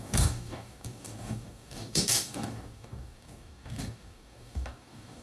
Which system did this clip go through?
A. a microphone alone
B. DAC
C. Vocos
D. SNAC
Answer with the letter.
B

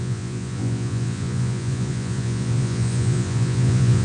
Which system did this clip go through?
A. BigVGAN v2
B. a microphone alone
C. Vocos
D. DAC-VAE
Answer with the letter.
C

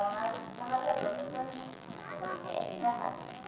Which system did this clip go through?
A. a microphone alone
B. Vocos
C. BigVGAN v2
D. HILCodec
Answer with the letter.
C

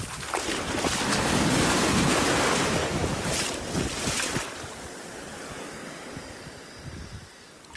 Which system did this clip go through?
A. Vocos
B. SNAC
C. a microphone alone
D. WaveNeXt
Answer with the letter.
C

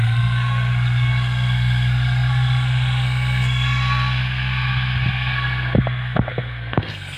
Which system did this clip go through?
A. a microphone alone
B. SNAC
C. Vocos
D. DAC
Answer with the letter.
B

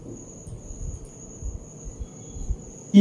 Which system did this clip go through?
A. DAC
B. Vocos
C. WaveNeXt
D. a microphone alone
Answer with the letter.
D